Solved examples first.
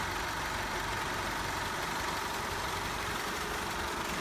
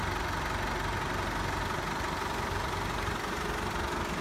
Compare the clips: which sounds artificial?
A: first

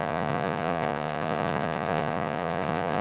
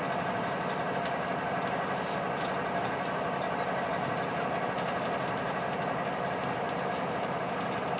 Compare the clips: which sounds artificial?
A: first